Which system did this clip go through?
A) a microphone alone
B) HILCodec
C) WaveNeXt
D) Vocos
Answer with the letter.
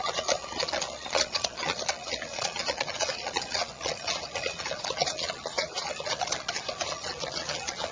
D